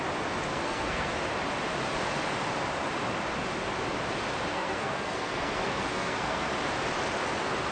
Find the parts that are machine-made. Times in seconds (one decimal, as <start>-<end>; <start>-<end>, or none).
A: 0.5-1.1; 4.5-6.5